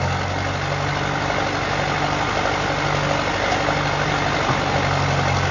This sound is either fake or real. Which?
real